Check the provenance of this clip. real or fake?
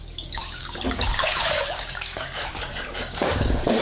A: fake